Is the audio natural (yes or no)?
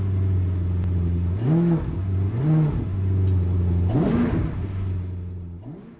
yes